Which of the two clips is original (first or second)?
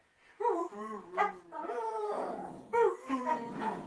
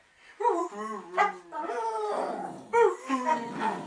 second